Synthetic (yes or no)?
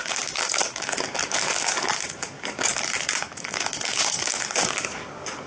yes